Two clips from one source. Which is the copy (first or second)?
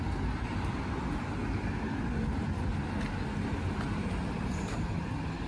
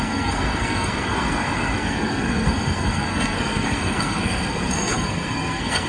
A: second